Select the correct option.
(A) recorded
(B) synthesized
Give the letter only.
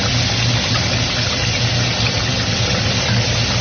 A